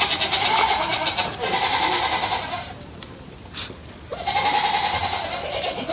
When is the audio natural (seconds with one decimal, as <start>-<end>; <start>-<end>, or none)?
0.0-5.9

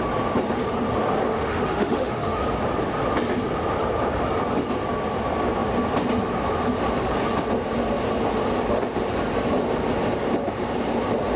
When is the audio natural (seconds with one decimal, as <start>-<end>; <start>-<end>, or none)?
0.0-1.3; 2.4-11.4

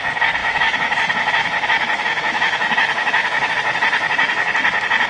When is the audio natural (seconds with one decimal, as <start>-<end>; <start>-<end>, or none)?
0.0-0.4; 3.5-5.1

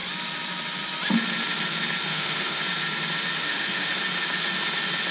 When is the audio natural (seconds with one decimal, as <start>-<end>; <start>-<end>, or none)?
0.0-2.1; 2.6-3.4; 3.9-5.1

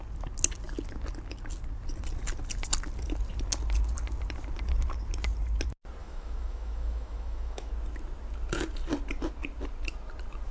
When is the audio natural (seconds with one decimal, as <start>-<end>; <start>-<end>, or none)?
0.0-6.0; 7.7-10.5